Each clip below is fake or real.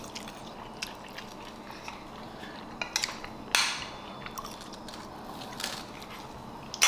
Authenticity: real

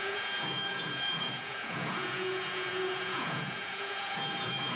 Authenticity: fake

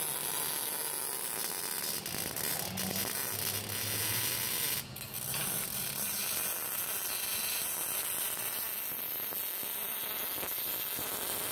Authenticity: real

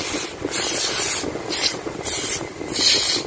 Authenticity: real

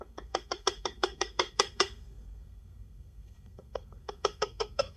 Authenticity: fake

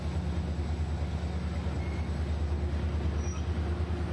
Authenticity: real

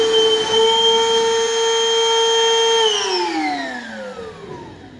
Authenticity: real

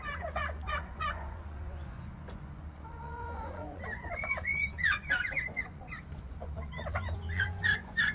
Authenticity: fake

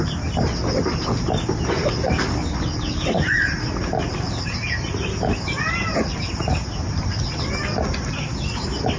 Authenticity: real